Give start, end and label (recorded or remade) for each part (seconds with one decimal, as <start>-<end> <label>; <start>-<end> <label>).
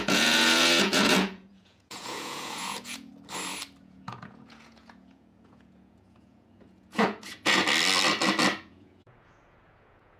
0.0-3.1 remade; 3.1-3.8 recorded; 3.8-7.6 remade; 7.6-8.6 recorded; 8.6-10.2 remade